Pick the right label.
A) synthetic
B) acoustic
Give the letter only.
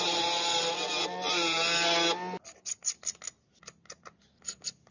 B